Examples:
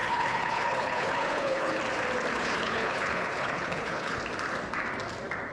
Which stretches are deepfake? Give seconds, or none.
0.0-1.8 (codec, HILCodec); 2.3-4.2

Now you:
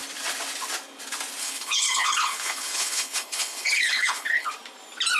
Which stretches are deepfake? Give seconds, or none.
1.4-4.5 (codec, HILCodec)

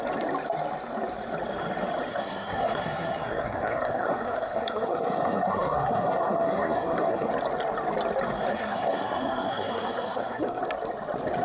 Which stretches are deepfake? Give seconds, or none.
2.1-7.3 (codec, SNAC); 8.5-10.6

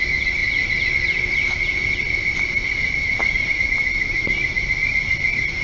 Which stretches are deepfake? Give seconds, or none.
none

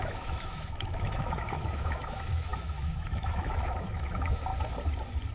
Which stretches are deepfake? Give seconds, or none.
0.0-4.5 (autoencoder, DAC-VAE)

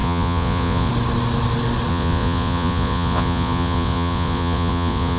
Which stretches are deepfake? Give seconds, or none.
0.0-0.9 (vocoder, Vocos); 1.9-5.2

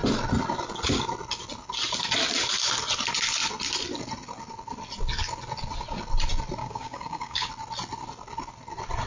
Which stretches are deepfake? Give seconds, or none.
6.6-7.5 (codec, DAC)